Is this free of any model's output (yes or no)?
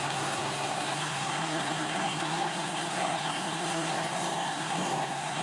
no